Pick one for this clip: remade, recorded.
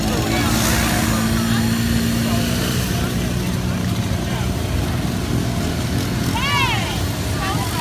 recorded